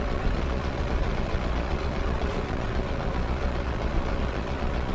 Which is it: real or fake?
fake